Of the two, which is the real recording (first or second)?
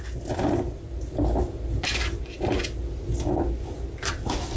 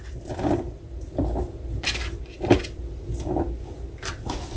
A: first